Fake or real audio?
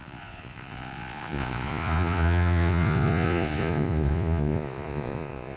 fake